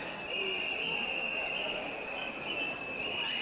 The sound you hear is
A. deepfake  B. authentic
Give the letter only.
B